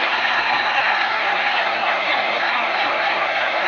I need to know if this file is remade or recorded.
remade